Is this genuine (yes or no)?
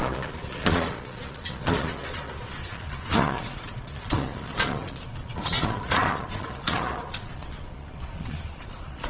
no